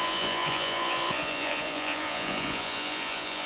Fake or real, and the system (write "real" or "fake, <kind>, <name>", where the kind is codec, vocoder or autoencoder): fake, vocoder, Vocos